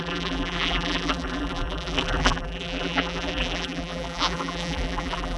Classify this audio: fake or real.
fake